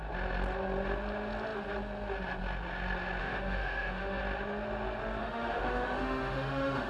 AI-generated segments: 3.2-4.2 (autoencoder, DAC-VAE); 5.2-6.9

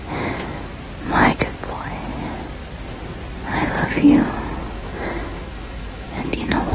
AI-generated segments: 0.0-0.7 (autoencoder, DAC-VAE); 4.7-6.7

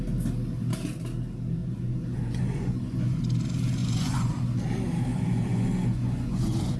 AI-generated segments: 1.6-3.2 (vocoder, Vocos); 3.8-4.3; 5.1-6.8

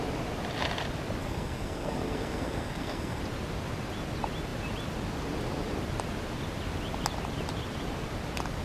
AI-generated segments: 1.2-3.2 (codec, SNAC)

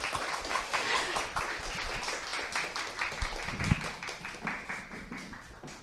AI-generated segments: 0.5-1.2 (autoencoder, DAC-VAE)

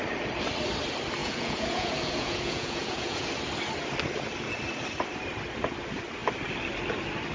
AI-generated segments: 1.2-3.3 (vocoder, Vocos)

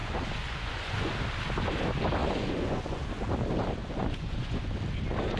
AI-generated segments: 0.0-1.1 (vocoder, Vocos); 2.2-3.0; 3.8-4.8

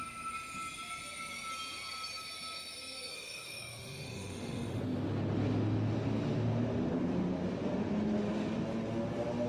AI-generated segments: 3.1-4.8 (autoencoder, DAC-VAE)